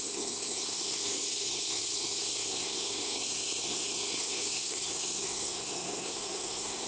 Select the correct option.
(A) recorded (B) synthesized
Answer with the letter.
B